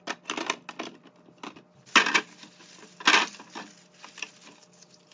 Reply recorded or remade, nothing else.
recorded